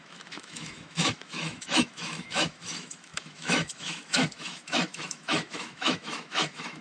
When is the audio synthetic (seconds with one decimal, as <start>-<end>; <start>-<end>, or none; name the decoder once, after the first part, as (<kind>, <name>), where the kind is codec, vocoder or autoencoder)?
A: 0.0-6.8 (autoencoder, DAC-VAE)